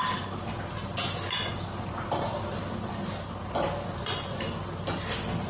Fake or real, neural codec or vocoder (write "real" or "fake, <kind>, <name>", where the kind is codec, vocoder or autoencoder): real